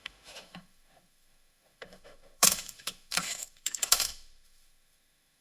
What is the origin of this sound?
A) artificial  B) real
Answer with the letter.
A